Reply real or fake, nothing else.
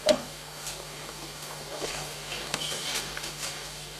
fake